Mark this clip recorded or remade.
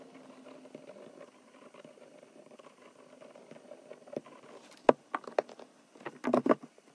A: recorded